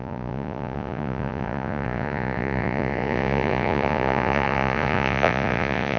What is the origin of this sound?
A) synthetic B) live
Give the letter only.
A